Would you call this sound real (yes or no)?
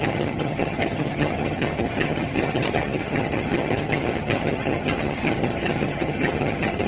no